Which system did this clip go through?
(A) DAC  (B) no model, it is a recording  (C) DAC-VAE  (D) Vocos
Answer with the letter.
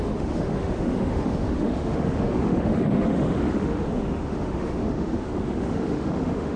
C